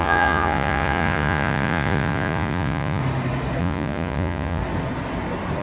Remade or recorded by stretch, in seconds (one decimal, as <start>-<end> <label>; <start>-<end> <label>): 0.0-3.0 remade; 3.0-3.6 recorded; 3.6-4.6 remade; 4.6-5.6 recorded